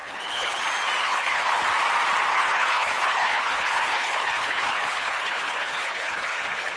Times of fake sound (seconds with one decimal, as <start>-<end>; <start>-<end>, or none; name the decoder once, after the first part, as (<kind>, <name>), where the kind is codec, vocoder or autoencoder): 0.0-0.6 (codec, HILCodec); 1.0-1.6; 2.3-6.8